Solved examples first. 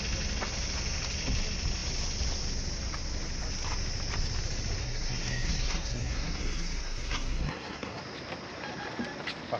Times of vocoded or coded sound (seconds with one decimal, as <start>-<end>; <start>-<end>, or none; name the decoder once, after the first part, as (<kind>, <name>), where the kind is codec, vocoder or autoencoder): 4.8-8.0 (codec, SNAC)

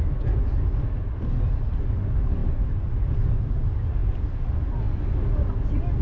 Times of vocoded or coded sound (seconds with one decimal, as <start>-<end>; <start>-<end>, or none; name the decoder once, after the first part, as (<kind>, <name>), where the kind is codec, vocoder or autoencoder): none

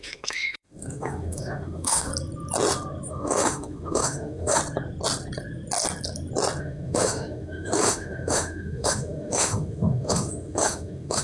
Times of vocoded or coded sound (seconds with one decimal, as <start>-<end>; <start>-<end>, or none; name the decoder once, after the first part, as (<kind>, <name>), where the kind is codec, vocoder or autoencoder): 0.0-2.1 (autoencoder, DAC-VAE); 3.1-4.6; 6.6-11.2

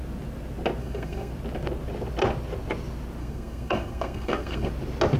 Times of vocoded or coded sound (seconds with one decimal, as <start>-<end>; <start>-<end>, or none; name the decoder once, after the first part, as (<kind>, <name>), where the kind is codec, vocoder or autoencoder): 0.8-1.3 (codec, SNAC); 3.2-4.7

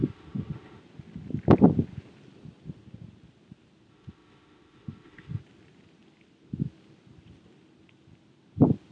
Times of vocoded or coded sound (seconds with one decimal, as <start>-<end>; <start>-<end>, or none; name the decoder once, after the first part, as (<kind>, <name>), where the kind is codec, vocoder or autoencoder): 0.0-0.8 (autoencoder, DAC-VAE); 3.9-5.4